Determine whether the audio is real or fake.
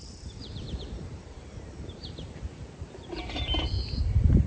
fake